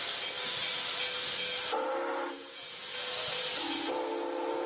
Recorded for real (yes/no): yes